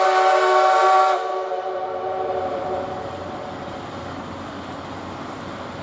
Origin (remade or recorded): recorded